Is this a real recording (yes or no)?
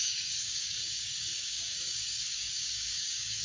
no